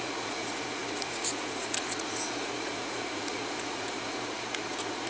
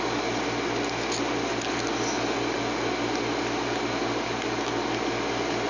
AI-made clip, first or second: first